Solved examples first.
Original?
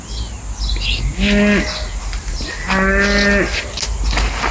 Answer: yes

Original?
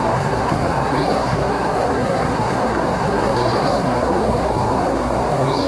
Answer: no